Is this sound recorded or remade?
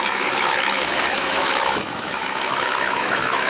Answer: remade